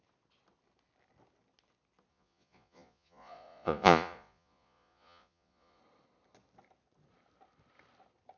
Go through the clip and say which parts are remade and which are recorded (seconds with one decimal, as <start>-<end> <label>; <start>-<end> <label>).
0.0-2.1 recorded; 2.1-5.8 remade; 5.8-8.4 recorded